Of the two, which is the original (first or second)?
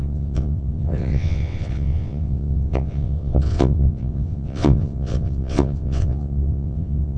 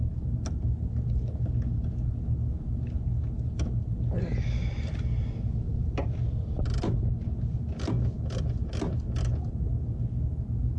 second